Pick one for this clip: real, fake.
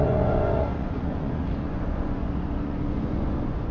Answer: fake